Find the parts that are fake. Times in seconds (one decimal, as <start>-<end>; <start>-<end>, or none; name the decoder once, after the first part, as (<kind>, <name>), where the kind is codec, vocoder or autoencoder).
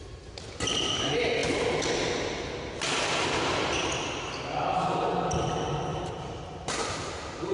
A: 5.9-7.5 (vocoder, BigVGAN v2)